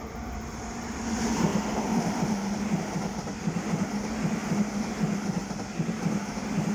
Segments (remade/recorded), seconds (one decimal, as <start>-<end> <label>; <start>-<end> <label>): 0.0-1.5 recorded; 1.5-2.8 remade; 2.8-6.7 recorded